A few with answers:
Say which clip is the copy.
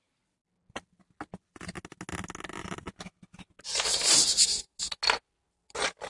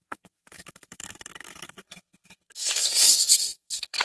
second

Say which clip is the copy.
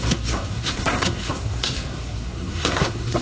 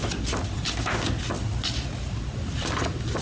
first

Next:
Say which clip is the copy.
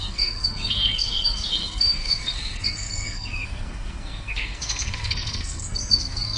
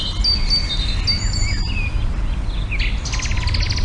first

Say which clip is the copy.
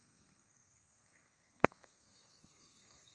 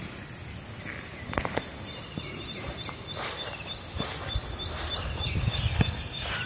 first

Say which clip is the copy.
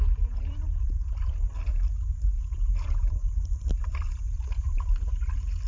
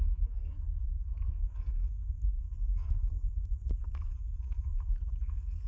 second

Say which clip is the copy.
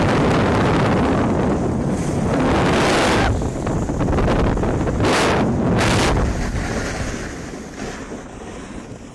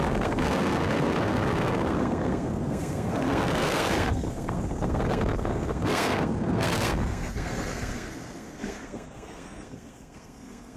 second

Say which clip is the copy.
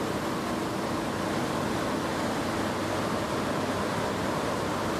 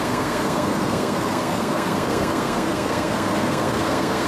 second